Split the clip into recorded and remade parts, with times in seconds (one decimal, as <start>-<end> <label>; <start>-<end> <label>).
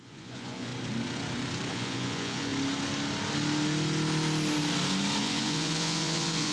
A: 0.0-0.7 remade; 0.7-1.7 recorded; 1.7-2.5 remade; 2.5-5.2 recorded; 5.2-6.5 remade